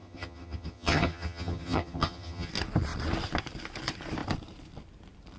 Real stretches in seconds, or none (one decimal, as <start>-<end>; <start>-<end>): 2.5-5.4